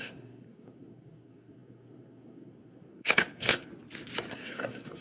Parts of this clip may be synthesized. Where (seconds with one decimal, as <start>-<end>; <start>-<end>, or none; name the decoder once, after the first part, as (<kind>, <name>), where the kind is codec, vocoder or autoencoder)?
0.0-3.7 (codec, SNAC); 4.3-5.0